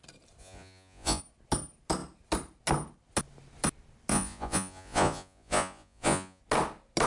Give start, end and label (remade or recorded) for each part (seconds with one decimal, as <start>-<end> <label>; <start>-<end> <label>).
0.0-0.4 recorded; 0.4-1.2 remade; 1.2-4.1 recorded; 4.1-6.4 remade; 6.4-7.1 recorded